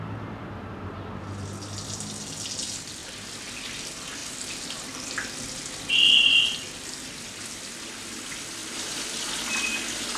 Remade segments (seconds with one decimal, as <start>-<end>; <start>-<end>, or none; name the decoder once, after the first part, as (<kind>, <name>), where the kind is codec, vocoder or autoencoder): 3.0-3.5 (vocoder, BigVGAN v2); 8.6-9.3